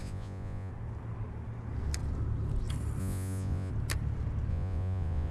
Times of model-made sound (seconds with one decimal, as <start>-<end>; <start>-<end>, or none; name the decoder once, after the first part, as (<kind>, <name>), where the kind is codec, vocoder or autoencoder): 0.0-0.7 (vocoder, Vocos); 3.0-3.7; 4.5-5.3